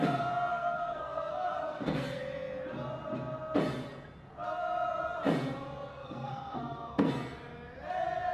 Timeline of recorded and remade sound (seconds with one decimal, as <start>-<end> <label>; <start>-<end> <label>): 0.0-0.5 recorded; 0.5-2.2 remade; 2.2-5.9 recorded; 5.9-7.1 remade; 7.1-8.3 recorded